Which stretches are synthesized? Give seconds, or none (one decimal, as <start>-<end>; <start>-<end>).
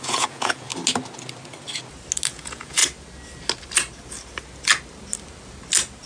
0.0-0.7; 2.3-2.8